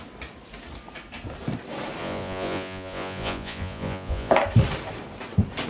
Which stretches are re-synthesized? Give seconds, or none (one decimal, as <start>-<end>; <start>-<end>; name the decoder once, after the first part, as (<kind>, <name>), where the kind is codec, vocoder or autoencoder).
2.0-4.3 (vocoder, Vocos)

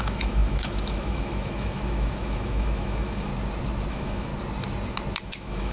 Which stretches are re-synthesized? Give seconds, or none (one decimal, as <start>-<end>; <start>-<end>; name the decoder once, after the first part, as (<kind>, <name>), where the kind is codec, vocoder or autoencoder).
0.0-3.3 (autoencoder, DAC-VAE); 3.9-4.3; 5.2-5.7

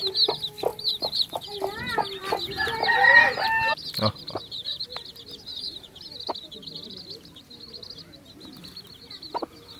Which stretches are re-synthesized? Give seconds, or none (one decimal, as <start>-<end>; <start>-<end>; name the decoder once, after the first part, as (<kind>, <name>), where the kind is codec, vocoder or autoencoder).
0.7-1.4 (vocoder, BigVGAN v2); 5.5-6.3